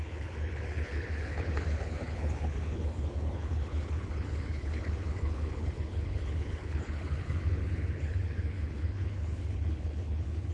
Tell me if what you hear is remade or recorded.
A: remade